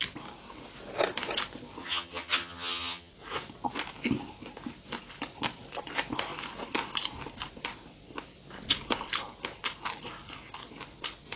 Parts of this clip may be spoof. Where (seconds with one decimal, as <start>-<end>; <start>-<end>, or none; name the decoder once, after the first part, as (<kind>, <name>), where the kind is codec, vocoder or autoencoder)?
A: 1.8-3.1 (vocoder, HiFi-GAN)